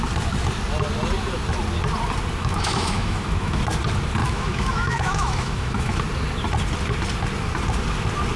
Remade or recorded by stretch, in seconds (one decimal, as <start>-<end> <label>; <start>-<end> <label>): 0.0-2.4 recorded; 2.4-3.6 remade; 3.6-4.2 recorded; 4.2-6.0 remade; 6.0-8.4 recorded